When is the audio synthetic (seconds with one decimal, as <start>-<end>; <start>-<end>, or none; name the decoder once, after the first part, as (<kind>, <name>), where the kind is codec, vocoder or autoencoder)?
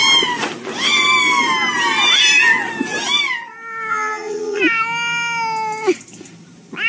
3.9-4.6 (vocoder, HiFi-GAN)